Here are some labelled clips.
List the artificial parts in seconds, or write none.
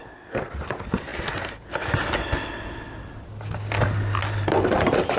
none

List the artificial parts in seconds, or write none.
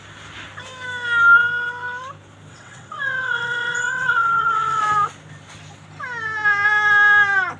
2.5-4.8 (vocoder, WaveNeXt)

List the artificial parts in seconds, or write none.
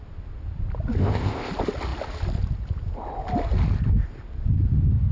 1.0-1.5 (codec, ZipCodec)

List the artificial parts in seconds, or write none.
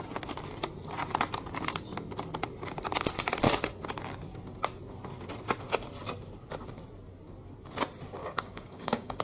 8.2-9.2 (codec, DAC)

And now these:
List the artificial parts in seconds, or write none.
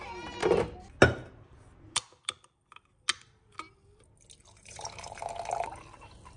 4.4-5.2 (vocoder, BigVGAN v2)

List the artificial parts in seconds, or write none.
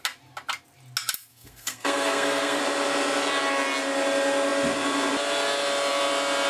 1.3-2.6 (codec, SNAC)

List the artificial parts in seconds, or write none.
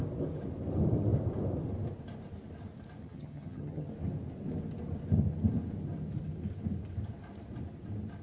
3.0-3.9 (vocoder, HiFi-GAN)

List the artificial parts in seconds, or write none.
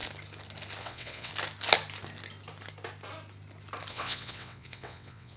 0.8-1.3 (vocoder, WaveNeXt); 3.9-5.4